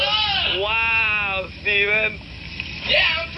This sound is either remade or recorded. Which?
recorded